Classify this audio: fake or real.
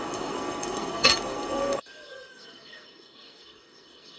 fake